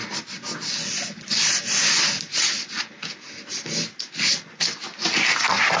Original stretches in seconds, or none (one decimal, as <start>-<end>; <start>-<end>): 0.0-5.8